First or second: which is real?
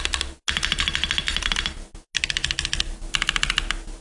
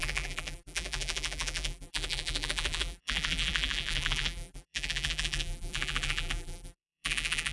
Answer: first